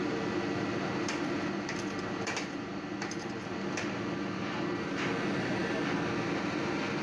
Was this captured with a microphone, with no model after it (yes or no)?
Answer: no